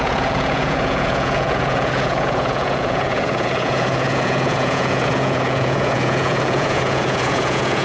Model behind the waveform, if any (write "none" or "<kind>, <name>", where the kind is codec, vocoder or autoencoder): vocoder, Vocos